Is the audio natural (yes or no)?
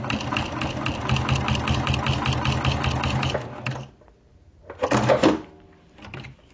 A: yes